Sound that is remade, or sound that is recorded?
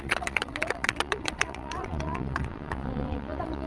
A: remade